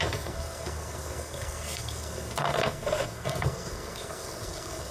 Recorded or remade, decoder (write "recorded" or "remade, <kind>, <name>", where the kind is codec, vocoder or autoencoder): remade, codec, SNAC